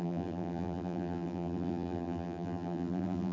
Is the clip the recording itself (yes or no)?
no